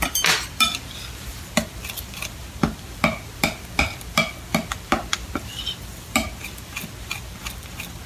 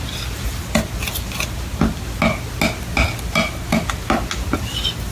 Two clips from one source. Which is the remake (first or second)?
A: first